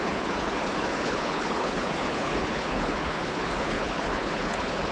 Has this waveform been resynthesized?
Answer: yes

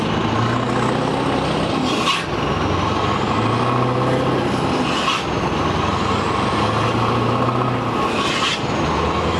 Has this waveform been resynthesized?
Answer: no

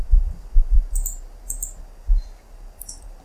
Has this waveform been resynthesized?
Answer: no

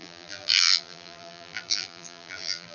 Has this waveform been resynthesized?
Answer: yes